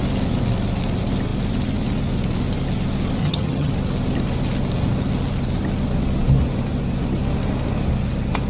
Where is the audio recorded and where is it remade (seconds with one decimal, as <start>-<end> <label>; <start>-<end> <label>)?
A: 0.0-3.2 recorded; 3.2-3.7 remade; 3.7-8.5 recorded